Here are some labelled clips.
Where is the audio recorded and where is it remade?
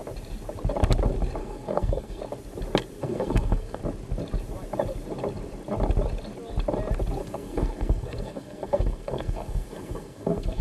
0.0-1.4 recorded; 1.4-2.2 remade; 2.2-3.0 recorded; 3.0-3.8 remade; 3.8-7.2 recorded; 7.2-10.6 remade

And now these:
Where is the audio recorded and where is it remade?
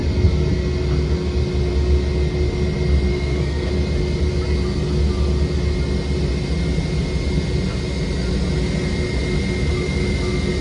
0.0-3.1 recorded; 3.1-3.7 remade; 3.7-10.6 recorded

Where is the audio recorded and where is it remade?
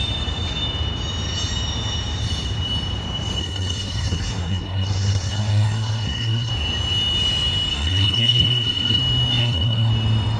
0.0-3.4 recorded; 3.4-6.5 remade; 6.5-7.7 recorded; 7.7-9.0 remade; 9.0-9.4 recorded; 9.4-9.9 remade; 9.9-10.4 recorded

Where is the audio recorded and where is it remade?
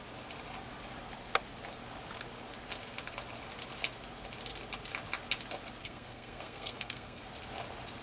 0.0-5.8 recorded; 5.8-7.2 remade; 7.2-8.0 recorded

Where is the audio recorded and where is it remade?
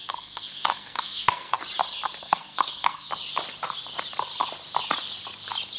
0.0-1.6 remade; 1.6-2.2 recorded; 2.2-3.1 remade; 3.1-5.8 recorded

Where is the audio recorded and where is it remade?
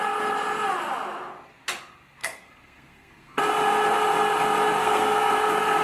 0.0-2.2 recorded; 2.2-3.4 remade; 3.4-4.8 recorded; 4.8-5.3 remade; 5.3-5.8 recorded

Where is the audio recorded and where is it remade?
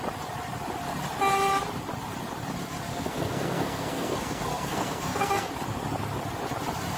0.0-2.9 recorded; 2.9-5.5 remade; 5.5-7.0 recorded